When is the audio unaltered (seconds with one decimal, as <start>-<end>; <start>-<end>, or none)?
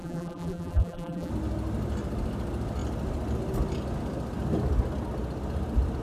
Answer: 1.3-6.0